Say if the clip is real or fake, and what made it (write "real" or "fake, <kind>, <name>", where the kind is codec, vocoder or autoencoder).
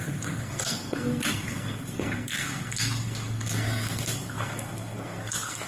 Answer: fake, codec, SNAC